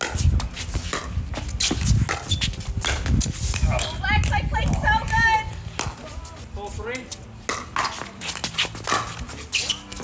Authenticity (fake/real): real